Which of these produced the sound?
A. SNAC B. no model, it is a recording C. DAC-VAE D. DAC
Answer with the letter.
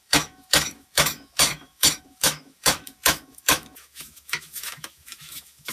C